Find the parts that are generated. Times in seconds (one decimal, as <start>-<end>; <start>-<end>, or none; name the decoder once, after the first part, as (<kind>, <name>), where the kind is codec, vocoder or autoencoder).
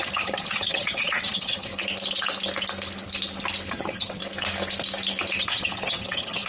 0.0-1.7 (vocoder, HiFi-GAN); 3.7-4.2; 5.4-6.5